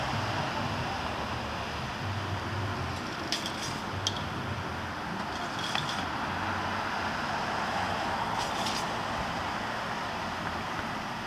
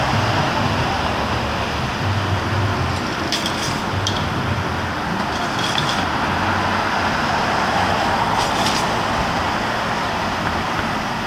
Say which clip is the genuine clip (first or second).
first